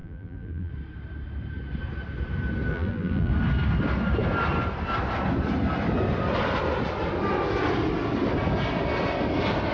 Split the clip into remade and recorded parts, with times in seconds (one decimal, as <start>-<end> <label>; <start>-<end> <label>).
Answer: 0.0-0.7 remade; 0.7-2.7 recorded; 2.7-3.3 remade; 3.3-9.7 recorded